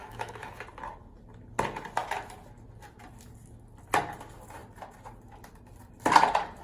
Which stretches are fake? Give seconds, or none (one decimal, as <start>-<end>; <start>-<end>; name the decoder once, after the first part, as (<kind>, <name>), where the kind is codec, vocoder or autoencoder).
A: 0.0-0.6 (autoencoder, DAC-VAE)